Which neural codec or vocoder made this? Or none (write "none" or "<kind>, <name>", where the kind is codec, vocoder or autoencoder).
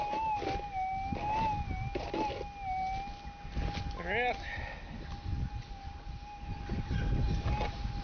none